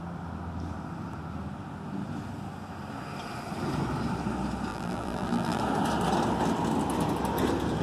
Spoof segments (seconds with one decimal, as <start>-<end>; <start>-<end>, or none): 4.7-5.6